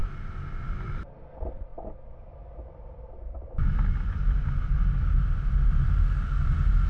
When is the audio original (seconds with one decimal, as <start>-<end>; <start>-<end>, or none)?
0.0-6.9